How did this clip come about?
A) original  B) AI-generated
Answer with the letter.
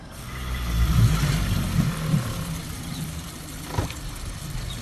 B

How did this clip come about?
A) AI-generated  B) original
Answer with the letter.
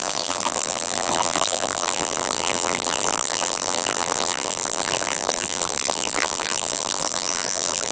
A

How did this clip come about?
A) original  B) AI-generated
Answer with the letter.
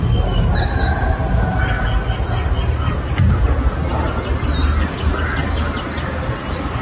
A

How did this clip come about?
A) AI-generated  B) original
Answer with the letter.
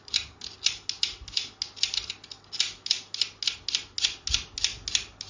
B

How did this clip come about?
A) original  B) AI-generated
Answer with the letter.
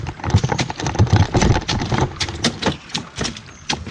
A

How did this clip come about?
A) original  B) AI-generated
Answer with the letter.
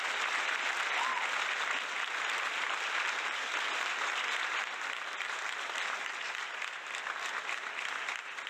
A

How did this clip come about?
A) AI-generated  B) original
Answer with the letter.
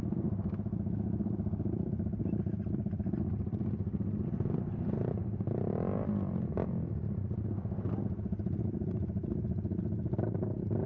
B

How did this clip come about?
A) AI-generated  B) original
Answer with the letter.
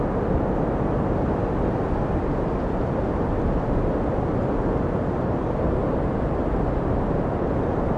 B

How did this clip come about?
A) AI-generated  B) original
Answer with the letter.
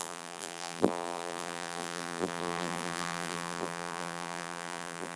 A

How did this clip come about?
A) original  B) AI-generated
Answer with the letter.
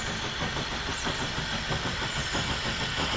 A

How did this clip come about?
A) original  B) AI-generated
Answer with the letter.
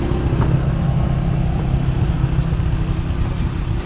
A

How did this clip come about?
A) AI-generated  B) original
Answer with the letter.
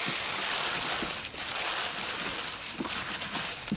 A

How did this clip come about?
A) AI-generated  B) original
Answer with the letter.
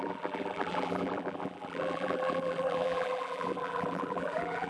A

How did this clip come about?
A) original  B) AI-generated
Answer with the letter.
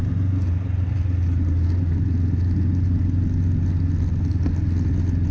A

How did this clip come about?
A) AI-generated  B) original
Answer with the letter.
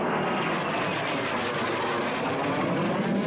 B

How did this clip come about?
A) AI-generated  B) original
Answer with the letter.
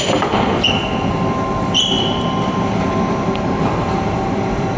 B